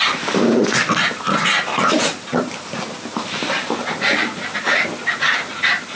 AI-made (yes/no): no